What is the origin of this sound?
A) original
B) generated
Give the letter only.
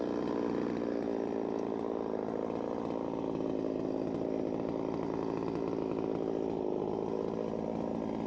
A